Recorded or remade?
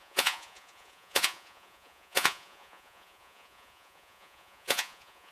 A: remade